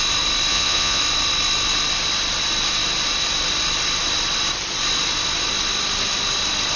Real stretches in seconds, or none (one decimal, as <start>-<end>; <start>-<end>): 0.0-0.5; 1.0-6.8